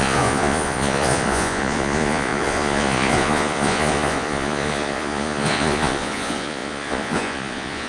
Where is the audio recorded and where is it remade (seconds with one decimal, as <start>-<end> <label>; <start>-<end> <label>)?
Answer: 0.0-7.9 remade